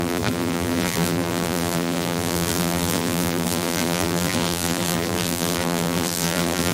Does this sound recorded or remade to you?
remade